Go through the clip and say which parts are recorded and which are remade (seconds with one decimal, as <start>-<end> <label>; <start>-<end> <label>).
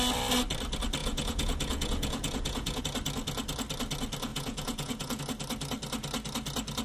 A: 0.0-1.0 recorded; 1.0-2.8 remade; 2.8-4.3 recorded; 4.3-5.2 remade; 5.2-6.8 recorded